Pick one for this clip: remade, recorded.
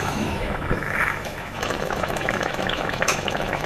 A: remade